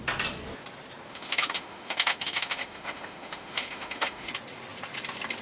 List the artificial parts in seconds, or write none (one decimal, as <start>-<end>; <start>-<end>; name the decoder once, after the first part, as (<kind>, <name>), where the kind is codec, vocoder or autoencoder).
1.1-4.3 (autoencoder, DAC-VAE)